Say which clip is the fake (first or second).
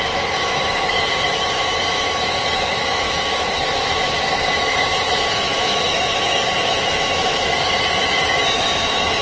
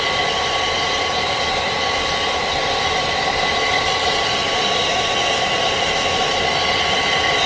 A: first